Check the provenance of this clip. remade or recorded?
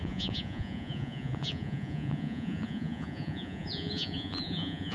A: remade